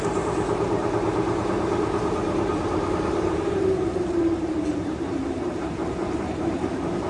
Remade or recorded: remade